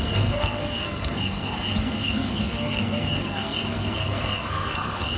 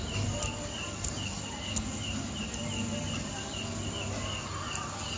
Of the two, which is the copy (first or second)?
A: first